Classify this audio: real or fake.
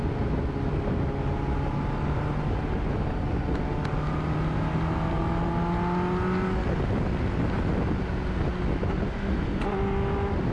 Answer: real